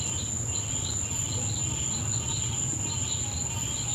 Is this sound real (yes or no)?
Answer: yes